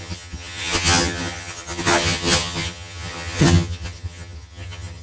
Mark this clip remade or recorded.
remade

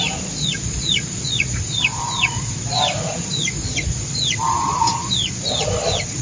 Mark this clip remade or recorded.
remade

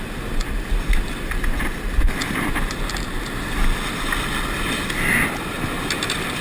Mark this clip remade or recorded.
recorded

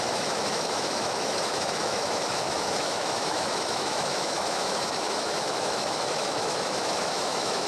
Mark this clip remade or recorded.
remade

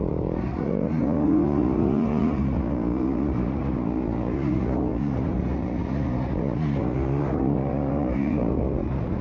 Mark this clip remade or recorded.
remade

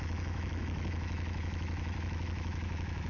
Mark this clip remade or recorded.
remade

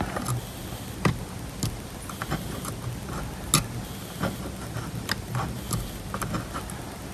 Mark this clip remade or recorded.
recorded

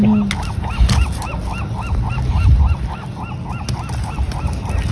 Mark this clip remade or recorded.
recorded